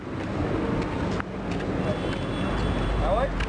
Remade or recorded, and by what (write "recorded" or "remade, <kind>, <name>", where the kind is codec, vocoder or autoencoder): recorded